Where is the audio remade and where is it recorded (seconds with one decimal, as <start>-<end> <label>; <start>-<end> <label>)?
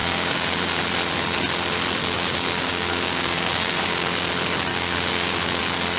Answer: 0.0-0.8 remade; 0.8-2.0 recorded; 2.0-4.3 remade; 4.3-4.7 recorded; 4.7-5.6 remade; 5.6-6.0 recorded